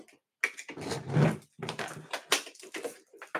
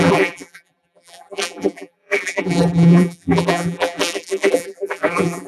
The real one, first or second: first